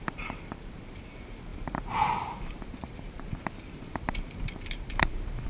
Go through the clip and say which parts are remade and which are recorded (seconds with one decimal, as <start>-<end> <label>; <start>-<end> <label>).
0.0-5.5 remade